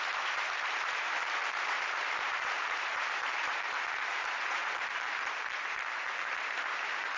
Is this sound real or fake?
fake